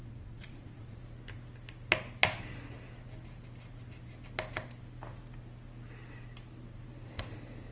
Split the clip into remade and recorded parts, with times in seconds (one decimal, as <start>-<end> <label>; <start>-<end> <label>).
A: 0.0-1.0 remade; 1.0-7.7 recorded